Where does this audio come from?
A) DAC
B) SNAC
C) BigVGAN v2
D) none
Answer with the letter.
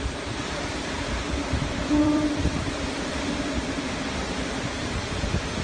C